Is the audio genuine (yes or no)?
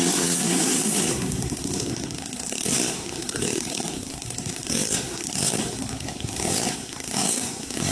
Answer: no